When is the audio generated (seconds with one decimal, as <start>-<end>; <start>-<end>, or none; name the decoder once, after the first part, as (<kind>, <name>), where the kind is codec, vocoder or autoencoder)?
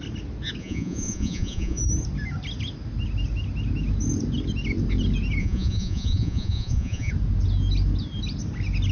0.6-1.8 (vocoder, Vocos); 5.4-7.1